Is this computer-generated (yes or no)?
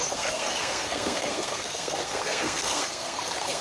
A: yes